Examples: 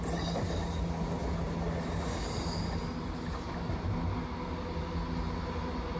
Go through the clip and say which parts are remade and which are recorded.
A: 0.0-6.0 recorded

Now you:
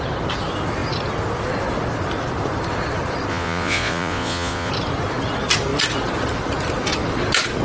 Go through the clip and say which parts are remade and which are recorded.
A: 0.0-3.3 recorded; 3.3-4.7 remade; 4.7-7.6 recorded

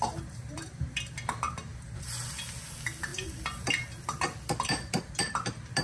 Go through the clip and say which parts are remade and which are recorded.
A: 0.0-5.8 recorded

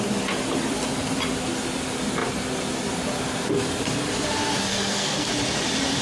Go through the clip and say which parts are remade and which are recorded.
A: 0.0-4.7 recorded; 4.7-5.3 remade; 5.3-6.0 recorded

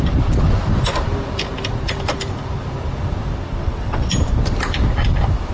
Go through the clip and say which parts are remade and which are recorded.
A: 0.0-3.6 recorded; 3.6-4.1 remade; 4.1-5.5 recorded

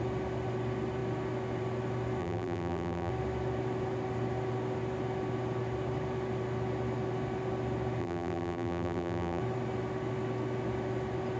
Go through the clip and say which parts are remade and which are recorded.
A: 0.0-2.2 recorded; 2.2-3.1 remade; 3.1-8.0 recorded; 8.0-9.4 remade; 9.4-11.4 recorded

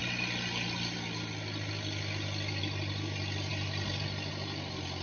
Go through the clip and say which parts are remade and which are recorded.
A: 0.0-5.0 recorded